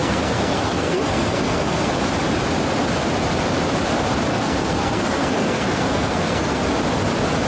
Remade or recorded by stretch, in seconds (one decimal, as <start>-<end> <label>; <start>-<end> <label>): 0.0-1.9 remade; 1.9-4.3 recorded; 4.3-6.6 remade; 6.6-7.5 recorded